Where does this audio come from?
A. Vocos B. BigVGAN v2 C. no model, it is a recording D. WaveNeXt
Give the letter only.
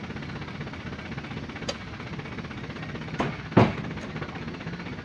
C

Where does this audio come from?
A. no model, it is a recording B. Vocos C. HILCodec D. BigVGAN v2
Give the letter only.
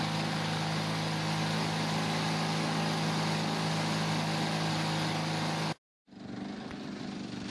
A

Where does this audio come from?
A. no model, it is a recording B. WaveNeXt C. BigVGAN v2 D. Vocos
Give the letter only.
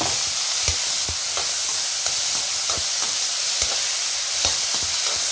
A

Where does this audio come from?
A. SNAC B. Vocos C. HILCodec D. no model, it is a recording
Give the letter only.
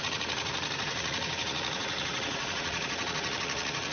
B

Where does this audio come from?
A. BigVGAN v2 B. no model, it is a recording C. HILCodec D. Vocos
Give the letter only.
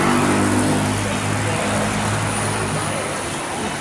B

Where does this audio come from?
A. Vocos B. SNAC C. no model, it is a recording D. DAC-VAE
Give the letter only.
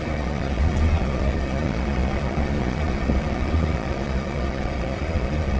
A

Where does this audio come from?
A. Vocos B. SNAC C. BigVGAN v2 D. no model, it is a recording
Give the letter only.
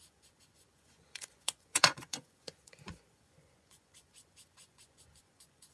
A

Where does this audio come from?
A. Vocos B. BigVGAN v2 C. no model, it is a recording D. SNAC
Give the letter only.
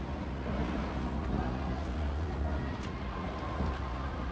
A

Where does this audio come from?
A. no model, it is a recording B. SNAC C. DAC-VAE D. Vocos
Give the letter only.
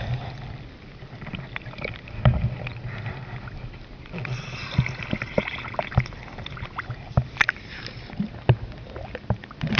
A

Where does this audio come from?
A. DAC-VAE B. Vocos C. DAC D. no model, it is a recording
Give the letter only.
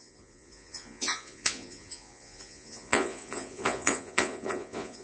B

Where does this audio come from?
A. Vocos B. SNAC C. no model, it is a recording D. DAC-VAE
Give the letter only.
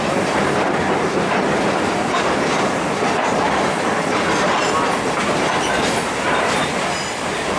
C